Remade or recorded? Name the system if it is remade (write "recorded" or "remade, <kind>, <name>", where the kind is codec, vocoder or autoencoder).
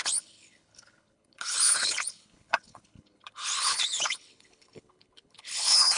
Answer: remade, codec, HILCodec